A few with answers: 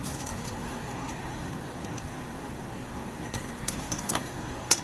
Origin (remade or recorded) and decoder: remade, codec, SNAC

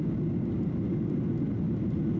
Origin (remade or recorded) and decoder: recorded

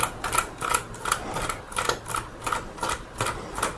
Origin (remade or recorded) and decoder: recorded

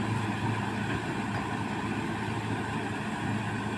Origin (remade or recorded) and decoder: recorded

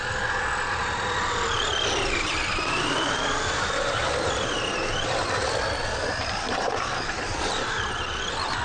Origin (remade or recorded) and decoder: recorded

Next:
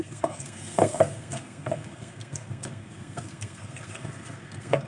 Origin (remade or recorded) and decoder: remade, codec, SNAC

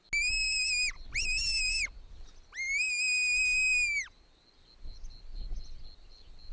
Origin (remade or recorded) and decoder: recorded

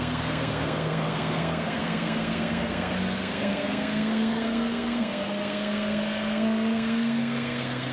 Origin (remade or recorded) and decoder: remade, codec, SNAC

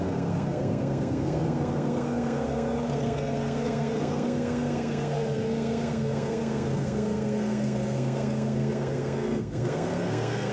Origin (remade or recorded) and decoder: remade, codec, SNAC